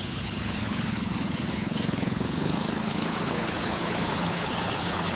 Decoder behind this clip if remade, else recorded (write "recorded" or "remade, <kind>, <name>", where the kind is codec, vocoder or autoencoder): remade, codec, HILCodec